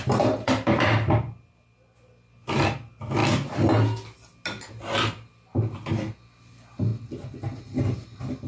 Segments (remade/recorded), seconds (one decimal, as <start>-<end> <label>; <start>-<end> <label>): 0.0-0.9 remade; 0.9-8.5 recorded